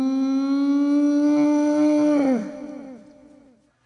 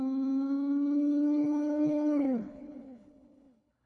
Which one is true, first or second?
first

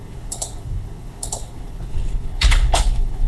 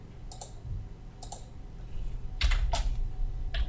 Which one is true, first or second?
second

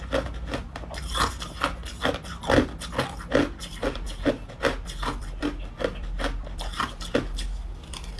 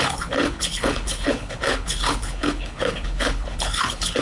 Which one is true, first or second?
first